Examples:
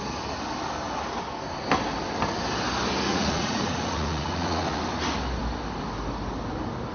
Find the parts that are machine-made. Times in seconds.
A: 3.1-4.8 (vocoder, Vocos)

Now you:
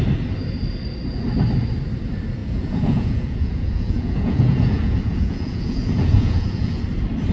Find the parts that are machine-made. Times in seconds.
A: 2.4-6.8 (vocoder, Vocos)